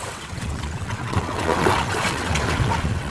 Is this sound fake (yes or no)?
yes